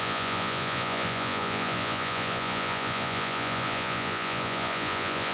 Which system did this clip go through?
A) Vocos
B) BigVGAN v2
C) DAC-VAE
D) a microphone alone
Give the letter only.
A